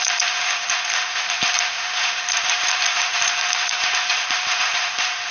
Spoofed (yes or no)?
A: yes